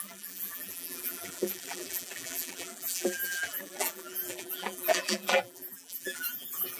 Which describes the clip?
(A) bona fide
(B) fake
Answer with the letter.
B